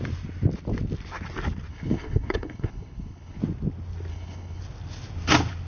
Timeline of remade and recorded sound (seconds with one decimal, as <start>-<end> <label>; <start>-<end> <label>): 0.0-1.7 recorded; 1.7-3.4 remade; 3.4-4.1 recorded; 4.1-4.6 remade; 4.6-5.7 recorded